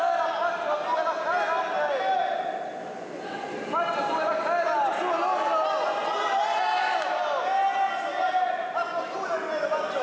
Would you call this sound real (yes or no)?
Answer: yes